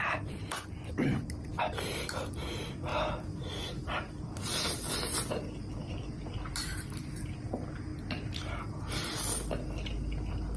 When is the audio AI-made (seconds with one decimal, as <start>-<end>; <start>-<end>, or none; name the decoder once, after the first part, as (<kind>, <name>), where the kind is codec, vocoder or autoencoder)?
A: none